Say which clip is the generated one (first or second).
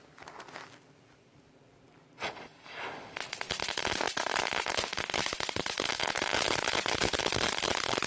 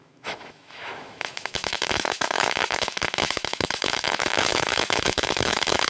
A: second